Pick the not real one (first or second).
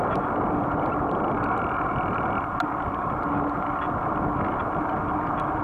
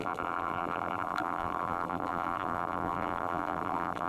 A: second